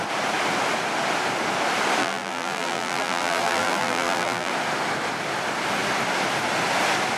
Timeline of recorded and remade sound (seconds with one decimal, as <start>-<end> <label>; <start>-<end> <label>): 0.0-2.0 recorded; 2.0-4.5 remade; 4.5-7.2 recorded